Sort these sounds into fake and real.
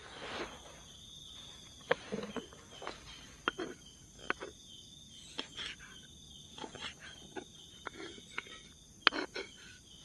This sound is real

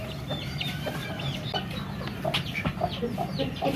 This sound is real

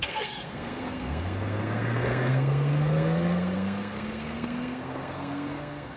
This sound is fake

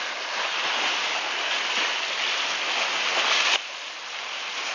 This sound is real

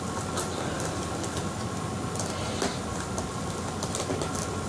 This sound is real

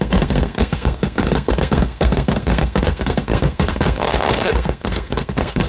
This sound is fake